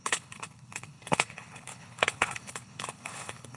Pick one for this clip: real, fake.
fake